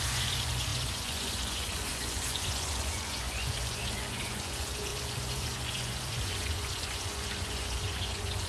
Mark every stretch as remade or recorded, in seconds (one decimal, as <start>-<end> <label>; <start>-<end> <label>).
0.0-8.5 remade